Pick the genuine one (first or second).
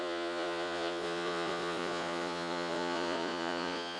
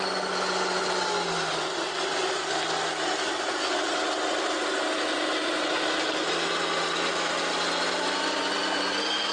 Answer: second